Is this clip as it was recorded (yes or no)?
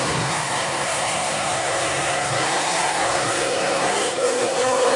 no